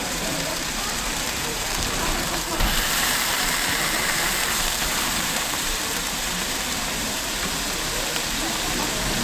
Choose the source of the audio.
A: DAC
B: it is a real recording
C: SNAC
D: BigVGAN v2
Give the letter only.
D